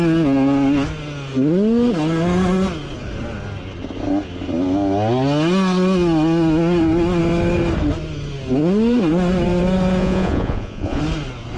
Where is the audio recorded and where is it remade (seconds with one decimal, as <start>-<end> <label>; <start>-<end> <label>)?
0.0-10.0 recorded; 10.0-11.0 remade; 11.0-11.6 recorded